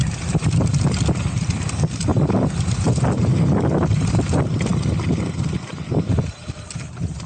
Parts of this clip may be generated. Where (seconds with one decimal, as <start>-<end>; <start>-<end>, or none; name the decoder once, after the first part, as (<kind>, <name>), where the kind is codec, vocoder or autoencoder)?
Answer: none

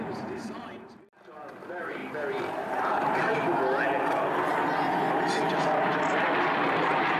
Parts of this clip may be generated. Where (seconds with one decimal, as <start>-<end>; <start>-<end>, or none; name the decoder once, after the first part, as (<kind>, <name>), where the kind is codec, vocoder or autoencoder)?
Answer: 0.0-2.0 (vocoder, BigVGAN v2); 2.6-3.3; 6.4-7.2